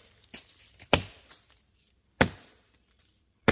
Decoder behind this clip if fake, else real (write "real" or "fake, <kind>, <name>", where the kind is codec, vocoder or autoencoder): real